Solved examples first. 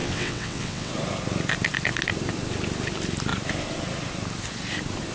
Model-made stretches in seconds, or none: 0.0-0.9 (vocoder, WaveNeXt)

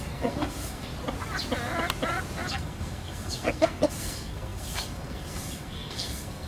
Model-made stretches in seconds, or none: 0.0-0.9 (codec, SNAC); 2.5-6.5